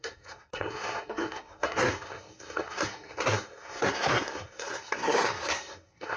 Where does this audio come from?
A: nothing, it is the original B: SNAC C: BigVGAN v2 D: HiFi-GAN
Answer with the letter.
B